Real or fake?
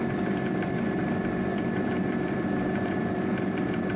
fake